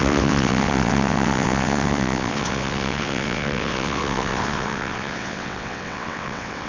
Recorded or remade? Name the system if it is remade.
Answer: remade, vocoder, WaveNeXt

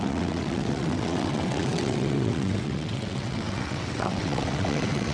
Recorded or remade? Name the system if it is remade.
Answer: remade, vocoder, WaveNeXt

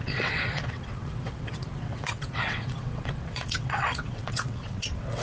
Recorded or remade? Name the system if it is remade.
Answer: remade, vocoder, WaveNeXt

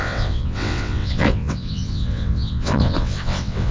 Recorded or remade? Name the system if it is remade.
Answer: remade, vocoder, WaveNeXt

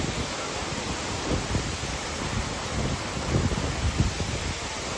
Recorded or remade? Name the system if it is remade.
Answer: recorded